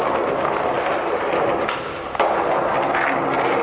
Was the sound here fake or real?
real